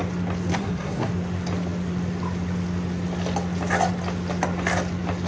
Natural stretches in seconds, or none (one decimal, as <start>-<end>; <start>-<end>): 0.0-0.5; 1.1-5.3